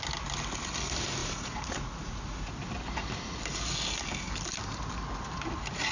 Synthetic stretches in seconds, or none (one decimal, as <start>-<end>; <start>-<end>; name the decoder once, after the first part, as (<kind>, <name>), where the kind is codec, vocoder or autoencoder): 1.2-2.5 (vocoder, Vocos)